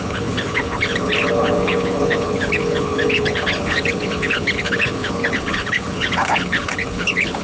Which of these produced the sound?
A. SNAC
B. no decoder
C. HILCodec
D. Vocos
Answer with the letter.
C